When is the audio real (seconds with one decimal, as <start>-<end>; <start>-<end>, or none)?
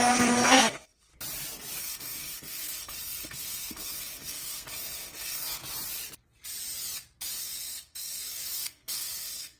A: 1.1-1.8; 5.6-7.4